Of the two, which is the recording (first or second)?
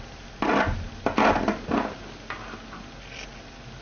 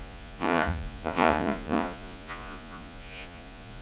first